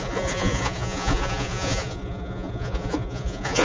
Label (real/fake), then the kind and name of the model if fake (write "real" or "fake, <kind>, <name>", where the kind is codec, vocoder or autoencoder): fake, vocoder, Vocos